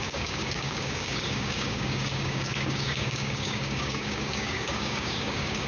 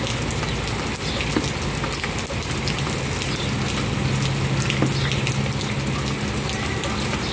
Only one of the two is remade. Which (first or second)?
first